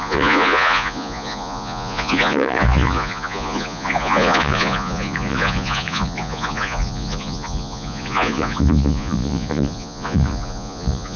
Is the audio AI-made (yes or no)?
yes